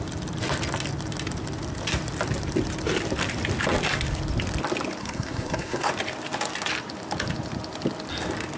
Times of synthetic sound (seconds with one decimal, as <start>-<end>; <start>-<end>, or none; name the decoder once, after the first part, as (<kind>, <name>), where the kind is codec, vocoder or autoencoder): 5.0-5.9 (codec, SNAC)